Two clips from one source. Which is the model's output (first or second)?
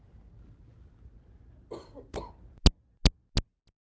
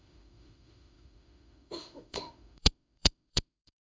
second